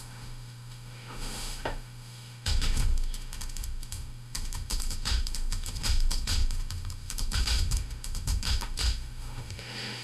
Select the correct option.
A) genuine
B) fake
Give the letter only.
B